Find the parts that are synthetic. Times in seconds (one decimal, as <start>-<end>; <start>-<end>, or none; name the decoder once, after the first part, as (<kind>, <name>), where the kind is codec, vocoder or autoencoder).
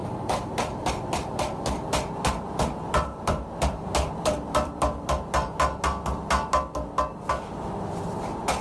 0.0-5.2 (vocoder, BigVGAN v2)